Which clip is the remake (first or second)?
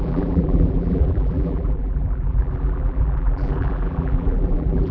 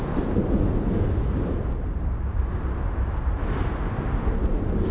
first